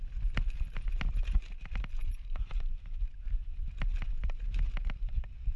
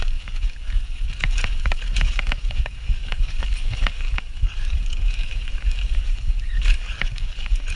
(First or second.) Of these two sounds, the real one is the first